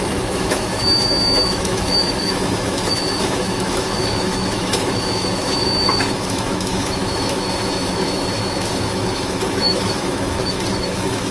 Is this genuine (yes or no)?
no